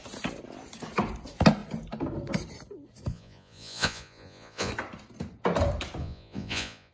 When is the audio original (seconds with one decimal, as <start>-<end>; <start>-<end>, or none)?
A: 0.0-3.1; 4.7-6.0